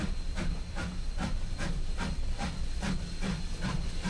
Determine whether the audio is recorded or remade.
recorded